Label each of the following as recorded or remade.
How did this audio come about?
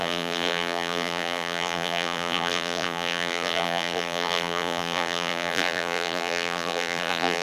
remade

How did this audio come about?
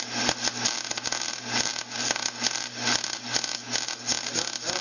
recorded